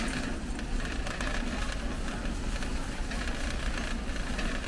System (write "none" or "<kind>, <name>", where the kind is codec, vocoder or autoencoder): none